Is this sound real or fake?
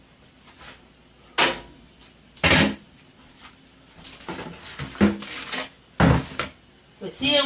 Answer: real